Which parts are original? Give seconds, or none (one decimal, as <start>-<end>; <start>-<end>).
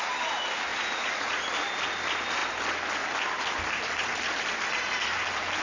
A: 0.0-0.7; 1.4-5.6